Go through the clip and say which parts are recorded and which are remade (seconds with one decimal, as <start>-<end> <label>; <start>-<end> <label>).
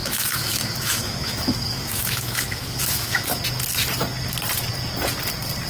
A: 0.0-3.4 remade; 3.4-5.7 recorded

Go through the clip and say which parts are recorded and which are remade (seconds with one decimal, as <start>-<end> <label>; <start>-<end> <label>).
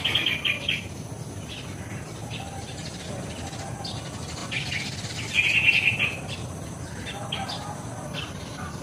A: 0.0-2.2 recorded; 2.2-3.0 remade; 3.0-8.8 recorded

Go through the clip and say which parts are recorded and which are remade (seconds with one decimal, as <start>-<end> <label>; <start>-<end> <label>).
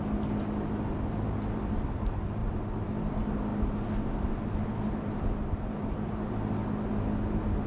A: 0.0-7.7 recorded